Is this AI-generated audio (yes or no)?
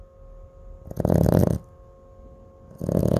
no